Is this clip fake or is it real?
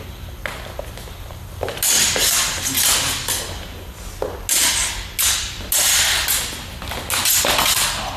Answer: real